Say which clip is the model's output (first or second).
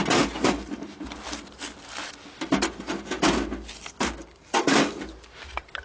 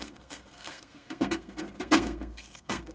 second